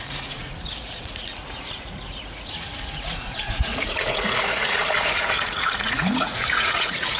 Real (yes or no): no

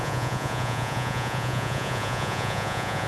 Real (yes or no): no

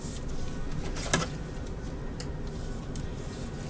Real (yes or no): yes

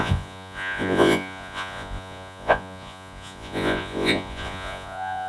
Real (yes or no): no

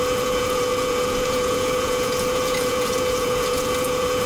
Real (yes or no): no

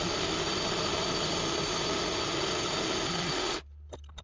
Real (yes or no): yes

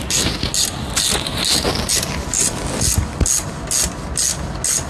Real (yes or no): yes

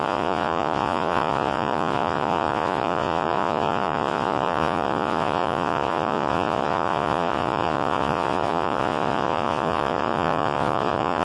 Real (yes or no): no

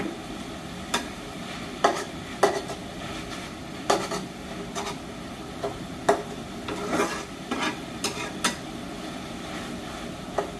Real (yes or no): yes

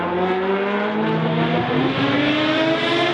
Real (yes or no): yes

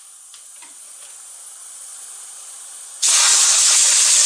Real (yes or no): yes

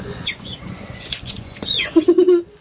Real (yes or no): no